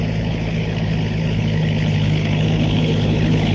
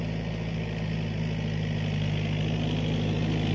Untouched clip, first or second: second